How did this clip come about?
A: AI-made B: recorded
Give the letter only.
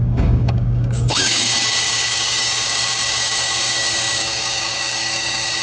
A